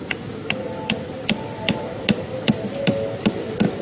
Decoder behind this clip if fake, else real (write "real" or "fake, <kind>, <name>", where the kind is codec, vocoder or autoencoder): real